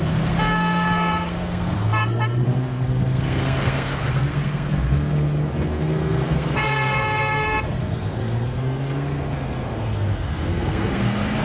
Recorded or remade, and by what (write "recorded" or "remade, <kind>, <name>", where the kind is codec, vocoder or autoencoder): remade, codec, SNAC